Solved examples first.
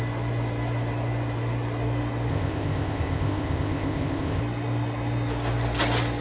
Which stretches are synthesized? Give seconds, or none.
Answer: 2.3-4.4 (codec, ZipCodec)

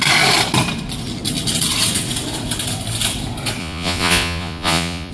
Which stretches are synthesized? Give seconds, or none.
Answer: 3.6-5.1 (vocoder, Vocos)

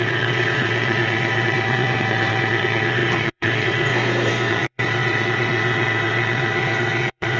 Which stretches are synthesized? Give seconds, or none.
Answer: 0.0-3.9 (vocoder, WaveNeXt); 4.5-7.4